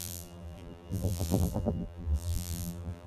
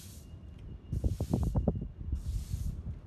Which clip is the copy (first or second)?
first